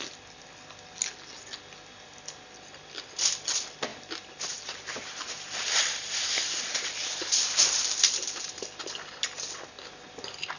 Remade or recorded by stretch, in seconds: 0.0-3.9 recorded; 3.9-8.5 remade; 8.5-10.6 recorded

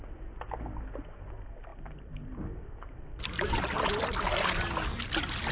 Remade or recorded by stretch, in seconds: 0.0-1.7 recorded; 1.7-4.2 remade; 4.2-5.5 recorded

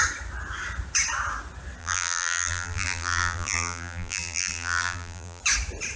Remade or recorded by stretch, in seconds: 0.0-1.8 recorded; 1.8-5.4 remade; 5.4-6.0 recorded

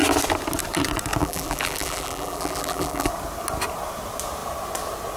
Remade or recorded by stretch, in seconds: 0.0-1.2 recorded; 1.2-3.1 remade; 3.1-5.2 recorded